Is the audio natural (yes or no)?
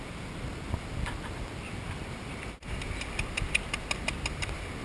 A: yes